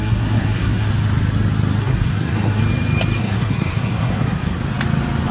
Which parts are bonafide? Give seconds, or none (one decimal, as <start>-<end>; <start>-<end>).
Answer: 0.9-1.8; 2.6-3.2; 4.6-5.3